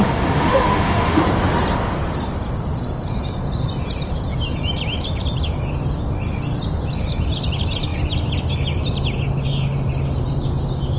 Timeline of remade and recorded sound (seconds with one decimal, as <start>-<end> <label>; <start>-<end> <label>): 0.0-1.2 remade; 1.2-11.0 recorded

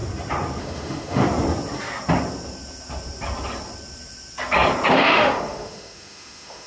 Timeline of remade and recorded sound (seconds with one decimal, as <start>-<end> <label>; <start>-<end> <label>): 0.0-0.6 recorded; 0.6-1.2 remade; 1.2-4.9 recorded; 4.9-6.7 remade

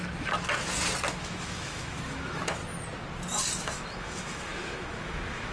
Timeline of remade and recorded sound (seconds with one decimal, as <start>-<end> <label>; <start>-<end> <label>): 0.0-1.1 recorded; 1.1-2.6 remade; 2.6-3.6 recorded; 3.6-5.5 remade

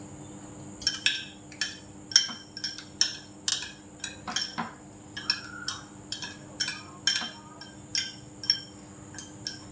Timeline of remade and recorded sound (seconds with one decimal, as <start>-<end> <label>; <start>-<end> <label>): 0.0-9.7 recorded

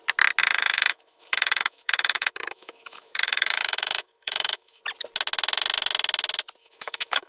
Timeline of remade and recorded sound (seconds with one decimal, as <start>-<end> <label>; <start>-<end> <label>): 0.0-0.4 recorded; 0.4-4.8 remade; 4.8-6.6 recorded; 6.6-7.3 remade

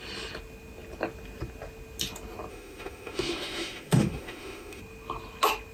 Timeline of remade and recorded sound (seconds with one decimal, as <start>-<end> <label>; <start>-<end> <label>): 0.0-2.5 recorded; 2.5-4.8 remade; 4.8-5.7 recorded

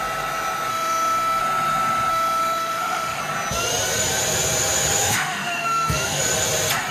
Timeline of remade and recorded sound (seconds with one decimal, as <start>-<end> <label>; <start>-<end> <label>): 0.0-0.7 recorded; 0.7-1.4 remade; 1.4-2.1 recorded; 2.1-3.2 remade; 3.2-5.0 recorded; 5.0-6.2 remade; 6.2-6.9 recorded

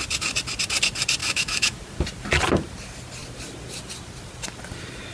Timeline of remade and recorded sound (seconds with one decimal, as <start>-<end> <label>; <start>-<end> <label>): 0.0-1.2 recorded; 1.2-1.8 remade; 1.8-5.1 recorded